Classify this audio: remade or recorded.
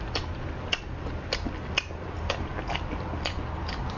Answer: recorded